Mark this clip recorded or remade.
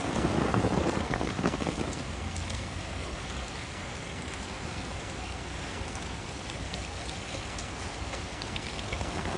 remade